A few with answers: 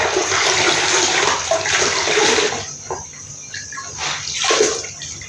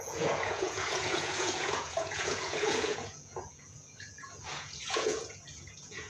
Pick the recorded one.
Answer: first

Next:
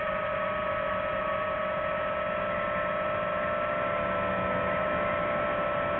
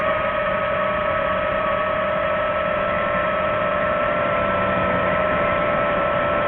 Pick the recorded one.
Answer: first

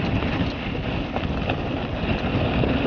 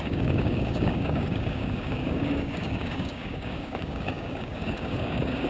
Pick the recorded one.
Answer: first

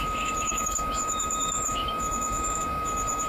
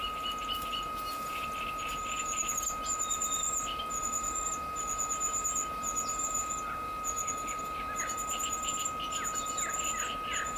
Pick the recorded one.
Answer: second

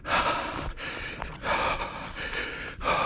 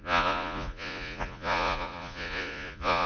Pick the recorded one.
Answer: first